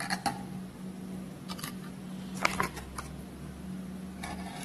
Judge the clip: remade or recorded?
recorded